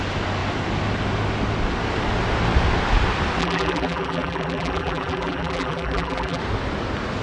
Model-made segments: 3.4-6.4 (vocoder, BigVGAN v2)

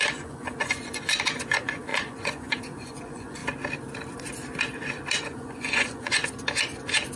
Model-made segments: 0.0-3.4 (vocoder, Vocos); 5.2-6.2

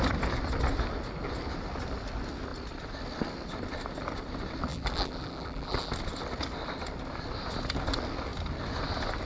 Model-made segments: 4.7-5.9 (vocoder, BigVGAN v2)

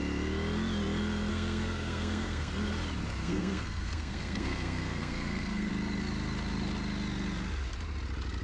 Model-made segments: 1.3-2.5 (codec, SNAC); 3.2-5.7

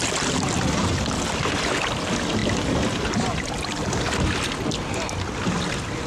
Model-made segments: none

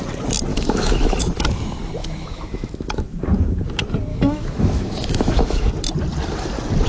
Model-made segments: 0.5-1.4 (autoencoder, DAC-VAE); 2.0-3.2; 4.1-5.7

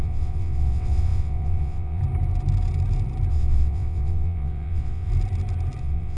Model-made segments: 0.0-2.0 (vocoder, WaveNeXt); 3.3-5.1; 5.8-6.2